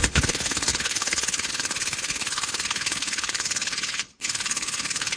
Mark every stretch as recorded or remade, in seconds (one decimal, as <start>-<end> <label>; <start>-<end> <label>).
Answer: 0.0-5.2 remade